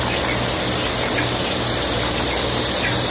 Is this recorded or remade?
recorded